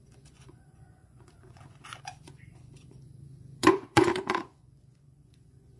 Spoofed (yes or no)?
yes